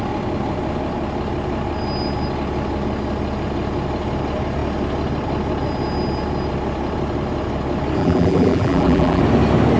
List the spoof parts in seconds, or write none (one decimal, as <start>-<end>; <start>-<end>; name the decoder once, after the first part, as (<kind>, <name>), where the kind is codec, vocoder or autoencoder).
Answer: 8.0-9.2 (vocoder, BigVGAN v2)